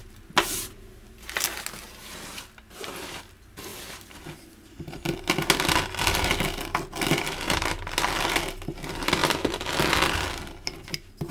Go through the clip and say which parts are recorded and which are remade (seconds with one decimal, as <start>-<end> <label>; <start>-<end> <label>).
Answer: 0.0-11.3 recorded